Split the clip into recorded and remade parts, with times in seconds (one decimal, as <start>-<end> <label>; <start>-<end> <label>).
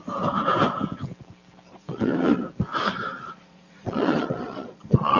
0.0-1.7 recorded; 1.7-2.4 remade; 2.4-3.1 recorded; 3.1-5.2 remade